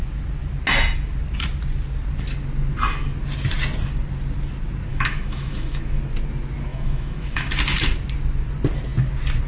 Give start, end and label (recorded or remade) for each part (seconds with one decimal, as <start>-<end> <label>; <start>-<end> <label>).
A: 0.0-4.9 recorded; 4.9-6.0 remade; 6.0-6.7 recorded; 6.7-7.5 remade; 7.5-9.5 recorded